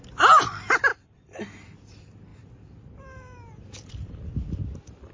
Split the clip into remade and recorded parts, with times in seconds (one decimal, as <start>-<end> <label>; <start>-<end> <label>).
0.0-0.9 recorded; 0.9-1.4 remade; 1.4-2.3 recorded; 2.3-4.3 remade; 4.3-5.1 recorded